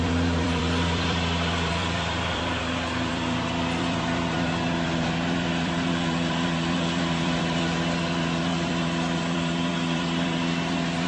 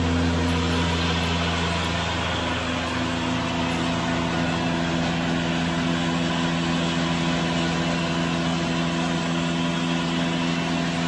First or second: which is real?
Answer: second